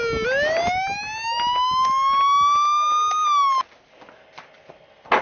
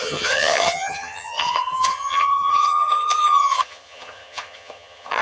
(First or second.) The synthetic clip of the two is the second